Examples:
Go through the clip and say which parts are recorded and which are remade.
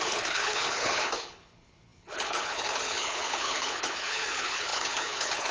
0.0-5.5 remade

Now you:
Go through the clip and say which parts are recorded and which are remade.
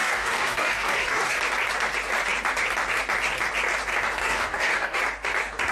0.0-1.4 remade; 1.4-4.2 recorded; 4.2-5.0 remade; 5.0-5.7 recorded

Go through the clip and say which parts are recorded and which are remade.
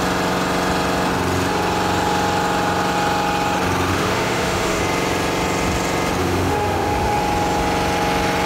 0.0-3.9 recorded; 3.9-4.8 remade; 4.8-6.2 recorded; 6.2-7.2 remade; 7.2-8.5 recorded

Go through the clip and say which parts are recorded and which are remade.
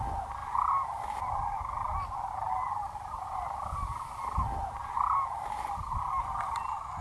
0.0-7.0 remade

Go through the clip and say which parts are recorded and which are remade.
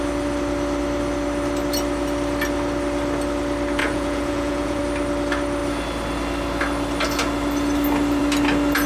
0.0-3.8 recorded; 3.8-4.8 remade; 4.8-8.9 recorded